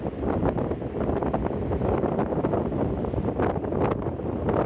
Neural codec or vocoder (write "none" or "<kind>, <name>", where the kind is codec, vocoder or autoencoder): none